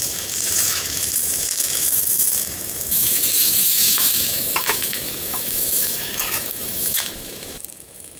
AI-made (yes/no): yes